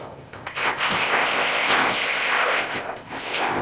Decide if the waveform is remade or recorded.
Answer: remade